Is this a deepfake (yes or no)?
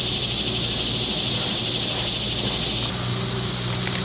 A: no